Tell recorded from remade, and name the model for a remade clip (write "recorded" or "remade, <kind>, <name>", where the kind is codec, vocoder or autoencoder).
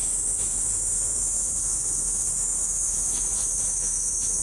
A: remade, autoencoder, DAC-VAE